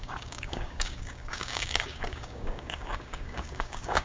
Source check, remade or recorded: remade